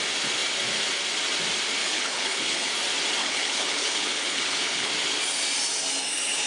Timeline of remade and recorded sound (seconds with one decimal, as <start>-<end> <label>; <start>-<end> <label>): 0.0-1.8 recorded; 1.8-2.7 remade; 2.7-3.2 recorded; 3.2-4.9 remade; 4.9-6.5 recorded